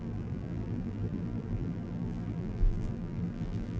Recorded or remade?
remade